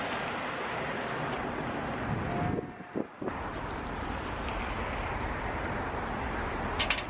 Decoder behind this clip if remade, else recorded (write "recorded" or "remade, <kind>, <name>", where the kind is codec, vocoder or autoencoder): recorded